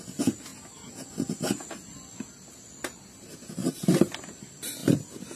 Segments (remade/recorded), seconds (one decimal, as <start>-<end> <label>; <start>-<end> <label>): 0.0-5.4 recorded